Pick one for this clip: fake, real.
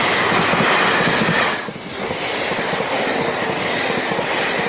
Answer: real